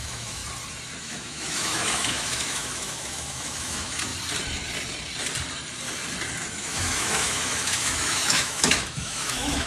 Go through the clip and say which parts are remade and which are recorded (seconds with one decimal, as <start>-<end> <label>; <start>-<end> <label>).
0.0-0.4 remade; 0.4-1.0 recorded; 1.0-4.1 remade; 4.1-6.5 recorded; 6.5-9.7 remade